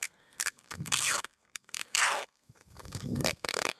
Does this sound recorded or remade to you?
remade